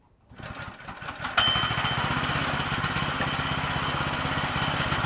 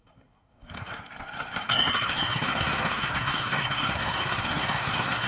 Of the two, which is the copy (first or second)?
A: second